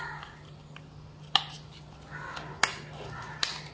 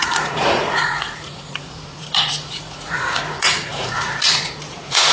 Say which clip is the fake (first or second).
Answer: second